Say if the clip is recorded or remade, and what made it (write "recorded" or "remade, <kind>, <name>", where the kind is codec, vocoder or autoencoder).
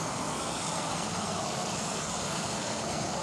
remade, codec, SNAC